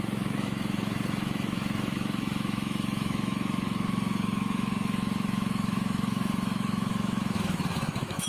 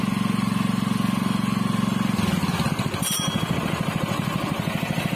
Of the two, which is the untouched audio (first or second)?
second